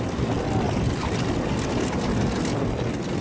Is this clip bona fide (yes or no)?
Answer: yes